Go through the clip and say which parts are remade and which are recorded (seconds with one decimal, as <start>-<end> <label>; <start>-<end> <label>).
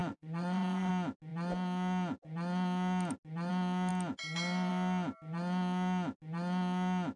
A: 0.0-0.9 remade; 0.9-7.2 recorded